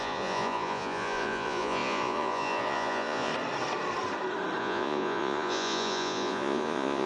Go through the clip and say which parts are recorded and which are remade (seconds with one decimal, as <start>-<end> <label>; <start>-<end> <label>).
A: 0.0-3.3 remade; 3.3-4.6 recorded; 4.6-7.1 remade